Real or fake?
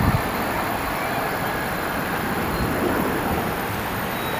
fake